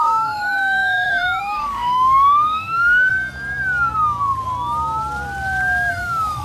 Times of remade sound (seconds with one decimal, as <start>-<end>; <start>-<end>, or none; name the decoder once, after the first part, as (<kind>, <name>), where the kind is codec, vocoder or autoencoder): 0.0-3.1 (autoencoder, DAC-VAE); 5.9-6.4